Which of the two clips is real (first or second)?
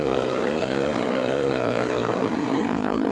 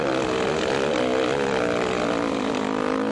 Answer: second